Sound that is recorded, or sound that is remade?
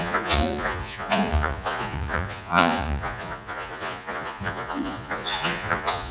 remade